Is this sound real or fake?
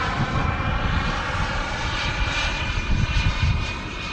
fake